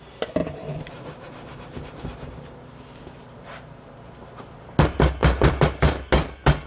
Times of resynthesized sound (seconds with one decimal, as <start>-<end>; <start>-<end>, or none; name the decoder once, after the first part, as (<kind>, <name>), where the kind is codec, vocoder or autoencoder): 0.4-4.4 (vocoder, BigVGAN v2); 5.2-6.1